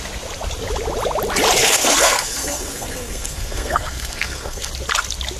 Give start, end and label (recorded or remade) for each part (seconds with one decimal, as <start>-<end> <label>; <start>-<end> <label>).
0.0-1.6 recorded; 1.6-4.7 remade; 4.7-5.4 recorded